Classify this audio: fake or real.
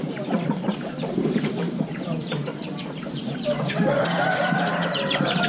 fake